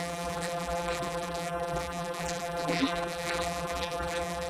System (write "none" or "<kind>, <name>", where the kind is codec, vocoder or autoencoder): vocoder, BigVGAN v2